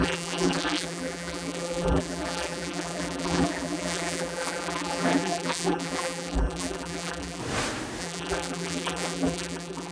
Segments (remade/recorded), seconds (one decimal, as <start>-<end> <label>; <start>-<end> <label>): 0.0-7.4 remade; 7.4-8.0 recorded; 8.0-9.9 remade

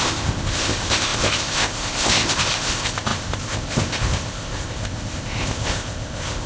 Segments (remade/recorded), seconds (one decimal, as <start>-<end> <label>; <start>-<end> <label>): 0.0-6.5 remade

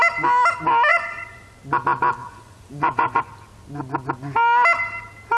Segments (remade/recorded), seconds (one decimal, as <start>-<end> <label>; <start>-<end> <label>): 0.0-0.9 recorded; 0.9-1.6 remade; 1.6-2.2 recorded; 2.2-3.2 remade; 3.2-5.4 recorded

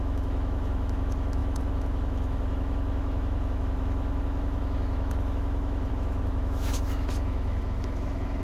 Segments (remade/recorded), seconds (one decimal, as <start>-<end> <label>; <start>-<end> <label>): 0.0-8.4 remade

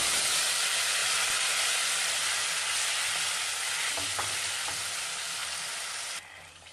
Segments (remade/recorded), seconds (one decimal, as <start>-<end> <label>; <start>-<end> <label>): 0.0-1.0 remade; 1.0-5.0 recorded; 5.0-5.4 remade; 5.4-5.9 recorded; 5.9-6.7 remade

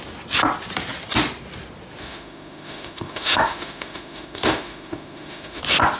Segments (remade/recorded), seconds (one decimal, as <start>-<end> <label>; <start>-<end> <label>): 0.0-2.0 recorded; 2.0-5.6 remade; 5.6-6.0 recorded